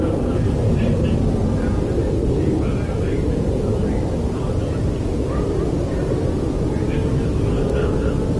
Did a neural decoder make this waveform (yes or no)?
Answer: no